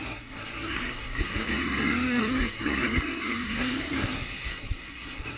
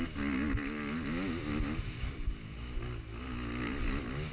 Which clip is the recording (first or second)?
second